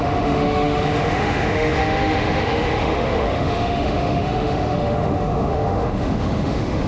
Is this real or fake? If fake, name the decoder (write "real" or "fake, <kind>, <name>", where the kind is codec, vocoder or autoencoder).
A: fake, autoencoder, DAC-VAE